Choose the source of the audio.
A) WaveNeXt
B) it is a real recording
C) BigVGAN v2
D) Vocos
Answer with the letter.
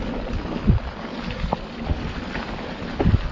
B